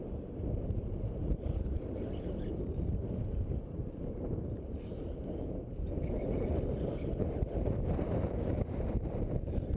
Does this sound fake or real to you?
fake